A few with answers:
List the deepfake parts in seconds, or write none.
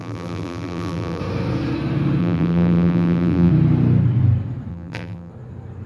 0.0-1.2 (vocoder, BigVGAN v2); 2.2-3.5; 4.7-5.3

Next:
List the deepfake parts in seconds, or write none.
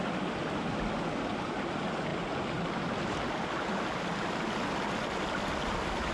none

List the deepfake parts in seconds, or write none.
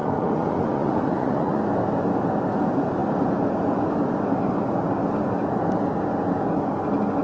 0.0-1.6 (vocoder, Vocos)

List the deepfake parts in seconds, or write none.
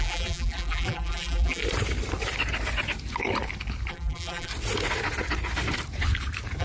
0.0-1.6 (vocoder, BigVGAN v2); 3.9-4.5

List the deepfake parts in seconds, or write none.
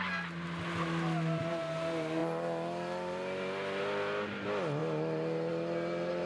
none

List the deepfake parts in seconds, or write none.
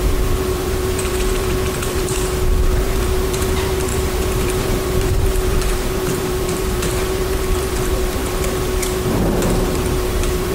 0.0-10.5 (vocoder, BigVGAN v2)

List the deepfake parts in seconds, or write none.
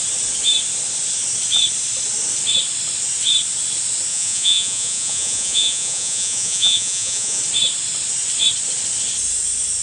4.1-7.4 (vocoder, Vocos)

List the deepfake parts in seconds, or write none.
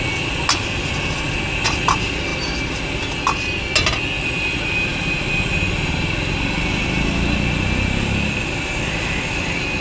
none